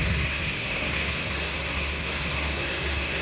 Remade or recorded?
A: remade